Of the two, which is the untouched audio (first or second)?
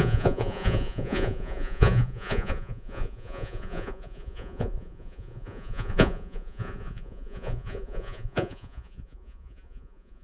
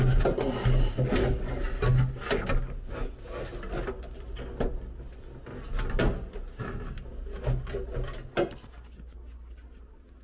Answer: second